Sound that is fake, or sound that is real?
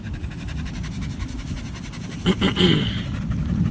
real